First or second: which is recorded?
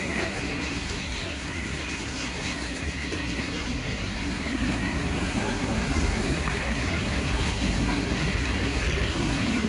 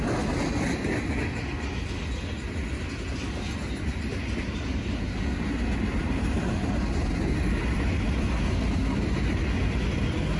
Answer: second